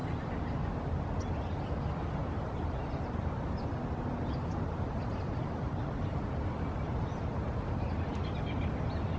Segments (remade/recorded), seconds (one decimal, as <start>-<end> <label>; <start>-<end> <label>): 0.0-2.2 recorded; 2.2-3.7 remade; 3.7-4.5 recorded; 4.5-5.9 remade; 5.9-9.2 recorded